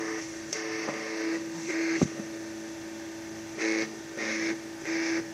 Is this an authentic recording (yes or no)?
no